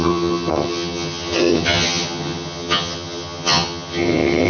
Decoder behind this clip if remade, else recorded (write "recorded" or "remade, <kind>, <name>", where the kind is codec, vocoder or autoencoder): remade, vocoder, HiFi-GAN